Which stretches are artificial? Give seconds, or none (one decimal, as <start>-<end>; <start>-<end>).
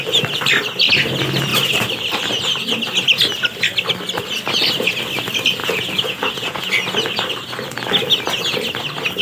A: 5.6-6.7